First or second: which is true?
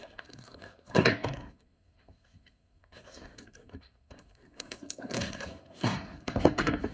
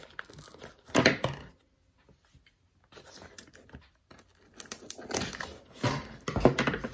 second